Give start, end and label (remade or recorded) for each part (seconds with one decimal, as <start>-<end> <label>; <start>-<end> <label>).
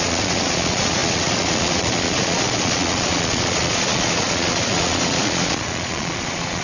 0.0-6.6 remade